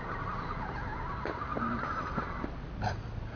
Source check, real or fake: real